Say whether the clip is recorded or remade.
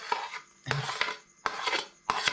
recorded